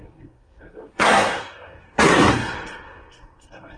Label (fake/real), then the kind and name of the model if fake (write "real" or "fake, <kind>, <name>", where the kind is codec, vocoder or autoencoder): fake, codec, SNAC